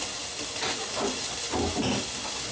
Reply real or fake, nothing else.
real